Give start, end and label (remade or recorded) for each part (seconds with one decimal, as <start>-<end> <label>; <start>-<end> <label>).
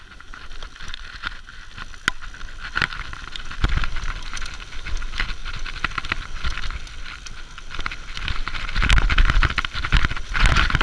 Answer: 0.0-10.8 recorded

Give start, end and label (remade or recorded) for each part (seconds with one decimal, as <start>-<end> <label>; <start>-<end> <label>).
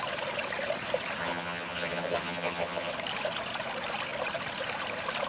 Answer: 0.0-1.2 recorded; 1.2-2.9 remade; 2.9-5.3 recorded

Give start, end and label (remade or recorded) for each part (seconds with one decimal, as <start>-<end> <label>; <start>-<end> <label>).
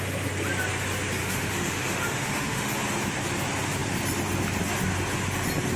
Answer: 0.0-1.2 recorded; 1.2-2.7 remade; 2.7-5.8 recorded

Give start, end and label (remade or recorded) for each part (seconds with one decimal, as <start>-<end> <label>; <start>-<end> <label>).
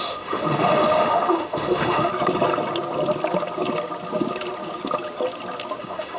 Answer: 0.0-2.1 remade; 2.1-5.8 recorded; 5.8-6.2 remade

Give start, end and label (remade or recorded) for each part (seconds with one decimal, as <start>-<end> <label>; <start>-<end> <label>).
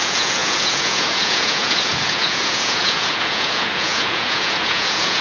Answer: 0.0-5.2 remade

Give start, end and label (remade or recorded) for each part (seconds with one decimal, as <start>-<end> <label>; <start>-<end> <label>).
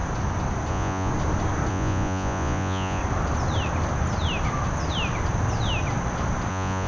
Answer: 0.0-0.7 recorded; 0.7-1.1 remade; 1.1-1.7 recorded; 1.7-3.0 remade; 3.0-6.5 recorded; 6.5-6.9 remade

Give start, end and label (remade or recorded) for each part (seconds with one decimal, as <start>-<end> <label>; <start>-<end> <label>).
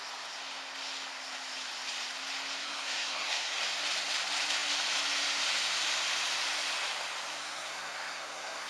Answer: 0.0-2.6 recorded; 2.6-3.6 remade; 3.6-7.4 recorded; 7.4-8.7 remade